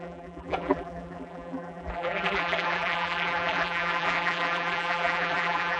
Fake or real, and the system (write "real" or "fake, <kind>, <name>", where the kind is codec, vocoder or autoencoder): fake, vocoder, BigVGAN v2